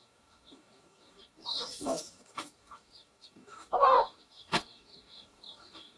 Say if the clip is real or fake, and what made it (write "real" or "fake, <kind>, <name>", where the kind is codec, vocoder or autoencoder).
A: fake, codec, DAC